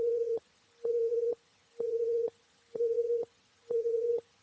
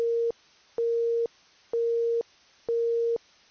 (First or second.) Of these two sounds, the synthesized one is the first